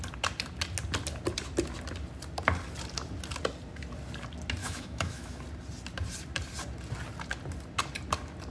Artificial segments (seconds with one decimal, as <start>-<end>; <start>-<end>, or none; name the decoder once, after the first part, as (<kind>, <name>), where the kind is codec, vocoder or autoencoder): 4.6-5.4 (autoencoder, DAC-VAE)